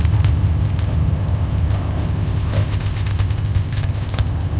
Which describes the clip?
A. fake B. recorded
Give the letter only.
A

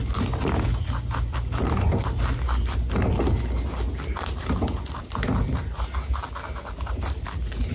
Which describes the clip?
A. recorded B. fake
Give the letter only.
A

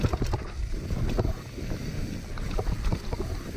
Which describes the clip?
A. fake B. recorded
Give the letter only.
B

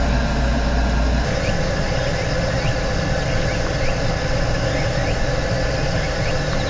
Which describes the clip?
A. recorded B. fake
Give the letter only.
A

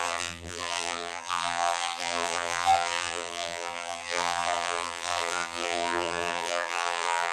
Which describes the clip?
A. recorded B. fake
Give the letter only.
B